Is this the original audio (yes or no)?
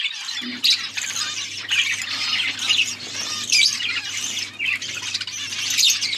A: yes